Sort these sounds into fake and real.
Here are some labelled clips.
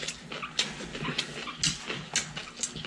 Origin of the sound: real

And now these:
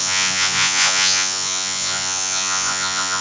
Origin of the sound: fake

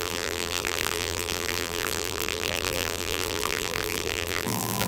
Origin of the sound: fake